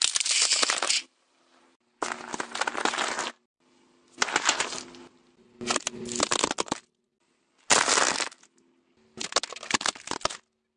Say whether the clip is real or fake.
real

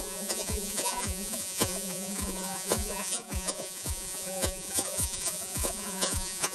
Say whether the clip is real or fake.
fake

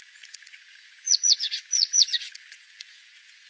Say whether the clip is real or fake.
fake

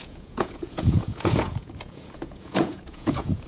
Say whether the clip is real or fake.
fake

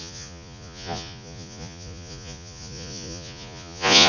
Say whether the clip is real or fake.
fake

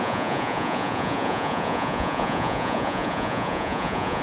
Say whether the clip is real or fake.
fake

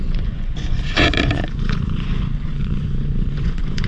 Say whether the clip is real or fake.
fake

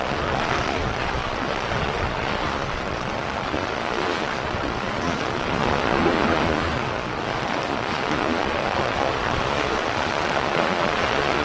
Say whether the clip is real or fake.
fake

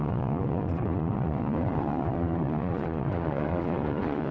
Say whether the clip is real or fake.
fake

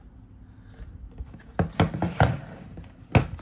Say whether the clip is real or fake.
real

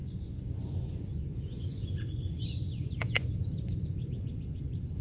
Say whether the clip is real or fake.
fake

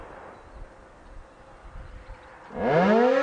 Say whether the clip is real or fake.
real